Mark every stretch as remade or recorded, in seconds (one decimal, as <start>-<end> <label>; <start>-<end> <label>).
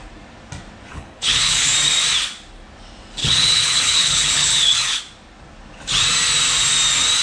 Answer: 0.0-0.9 recorded; 0.9-1.7 remade; 1.7-3.2 recorded; 3.2-5.0 remade; 5.0-7.2 recorded